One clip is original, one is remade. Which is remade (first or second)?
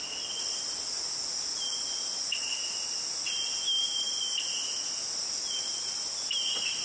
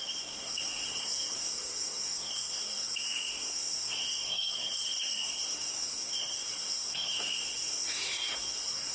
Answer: second